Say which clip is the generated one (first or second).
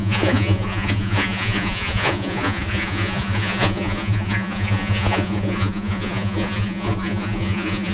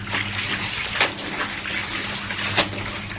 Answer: first